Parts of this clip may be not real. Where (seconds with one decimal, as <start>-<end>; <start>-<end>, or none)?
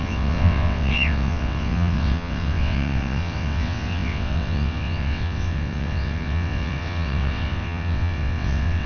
0.0-8.9